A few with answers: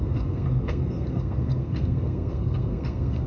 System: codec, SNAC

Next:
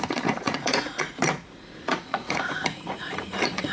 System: vocoder, Vocos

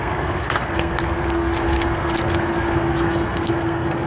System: codec, SNAC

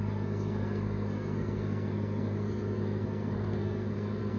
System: codec, SNAC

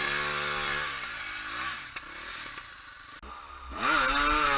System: none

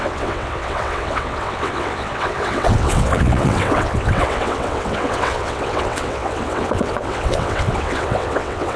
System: vocoder, WaveNeXt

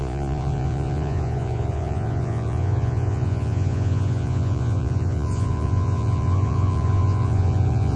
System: vocoder, Vocos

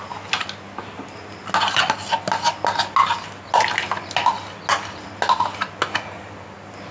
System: none